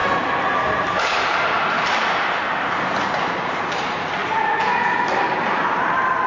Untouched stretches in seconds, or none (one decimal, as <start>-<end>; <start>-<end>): 3.8-4.2; 5.2-6.3

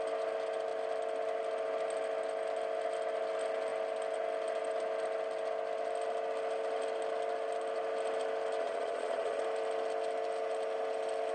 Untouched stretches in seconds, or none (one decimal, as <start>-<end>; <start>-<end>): 0.0-8.6; 9.4-11.3